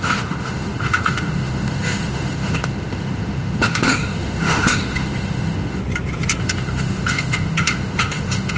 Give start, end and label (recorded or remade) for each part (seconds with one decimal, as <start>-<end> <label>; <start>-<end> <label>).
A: 0.0-5.8 remade; 5.8-6.4 recorded; 6.4-8.6 remade

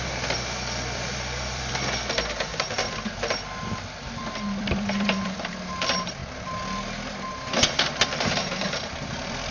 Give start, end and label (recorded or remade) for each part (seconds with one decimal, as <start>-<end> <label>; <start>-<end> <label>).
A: 0.0-6.2 remade; 6.2-7.3 recorded; 7.3-9.5 remade

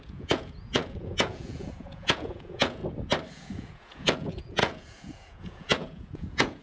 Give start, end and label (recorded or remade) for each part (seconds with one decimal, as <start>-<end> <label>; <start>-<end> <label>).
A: 0.0-2.8 remade; 2.8-3.3 recorded; 3.3-6.6 remade

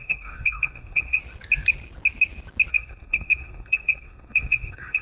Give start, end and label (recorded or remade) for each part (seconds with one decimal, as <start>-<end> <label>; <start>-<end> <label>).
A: 0.0-1.2 remade; 1.2-2.7 recorded; 2.7-5.0 remade

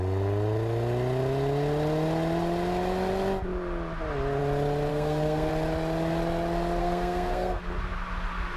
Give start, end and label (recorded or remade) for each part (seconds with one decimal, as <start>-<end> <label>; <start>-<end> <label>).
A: 0.0-4.9 recorded; 4.9-5.5 remade; 5.5-6.8 recorded; 6.8-7.6 remade; 7.6-8.6 recorded